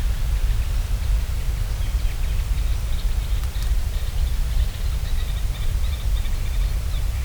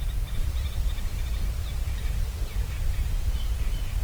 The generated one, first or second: second